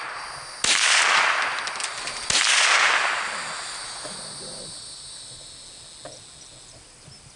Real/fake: real